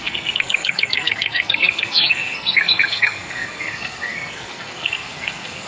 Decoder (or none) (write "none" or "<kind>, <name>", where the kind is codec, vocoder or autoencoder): codec, SNAC